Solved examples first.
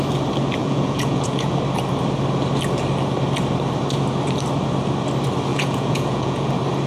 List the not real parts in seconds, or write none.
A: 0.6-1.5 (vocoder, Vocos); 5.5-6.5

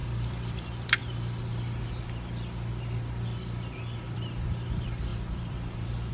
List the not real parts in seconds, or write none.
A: 0.0-1.0 (vocoder, BigVGAN v2); 4.0-6.1

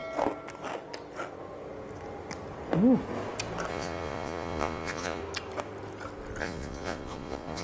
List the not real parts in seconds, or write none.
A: 3.7-5.2 (vocoder, Vocos); 6.4-7.6

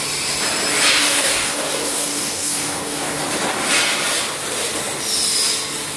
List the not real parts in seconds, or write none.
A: 0.9-3.2 (codec, DAC)

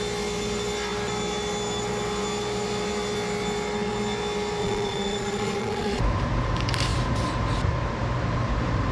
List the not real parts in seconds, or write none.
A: 4.6-6.0 (vocoder, Vocos)

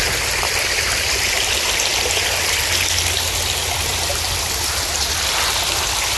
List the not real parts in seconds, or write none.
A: none